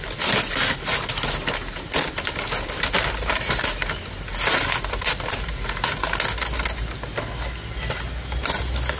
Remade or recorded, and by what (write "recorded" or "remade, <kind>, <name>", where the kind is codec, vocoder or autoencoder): recorded